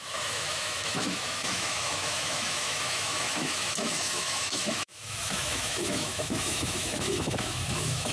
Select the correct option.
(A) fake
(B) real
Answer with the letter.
A